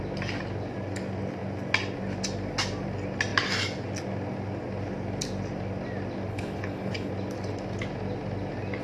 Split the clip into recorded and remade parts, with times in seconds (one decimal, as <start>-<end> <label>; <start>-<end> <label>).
0.0-6.3 recorded; 6.3-7.1 remade; 7.1-8.8 recorded